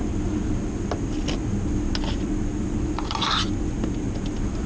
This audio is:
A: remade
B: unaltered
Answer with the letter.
B